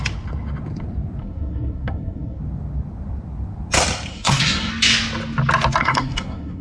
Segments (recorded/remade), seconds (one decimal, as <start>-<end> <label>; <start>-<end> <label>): 0.0-1.2 recorded; 1.2-2.4 remade; 2.4-4.1 recorded; 4.1-4.7 remade; 4.7-5.8 recorded; 5.8-6.6 remade